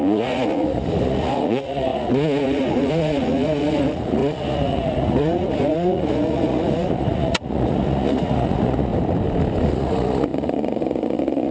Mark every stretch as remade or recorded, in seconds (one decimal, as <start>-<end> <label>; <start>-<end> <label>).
0.0-8.9 remade; 8.9-9.6 recorded; 9.6-11.5 remade